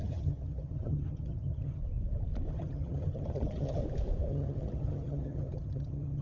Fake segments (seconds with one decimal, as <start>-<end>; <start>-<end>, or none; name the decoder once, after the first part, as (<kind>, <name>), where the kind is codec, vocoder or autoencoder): 0.0-1.8 (vocoder, HiFi-GAN); 2.5-3.8; 4.3-6.2